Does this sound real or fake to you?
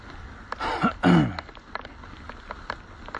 real